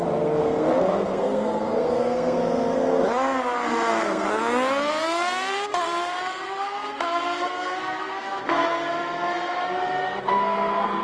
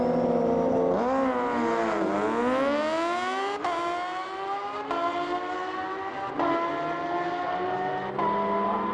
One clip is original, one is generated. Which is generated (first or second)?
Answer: first